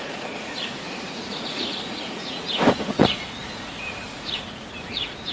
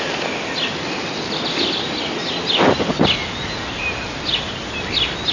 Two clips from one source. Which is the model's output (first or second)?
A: first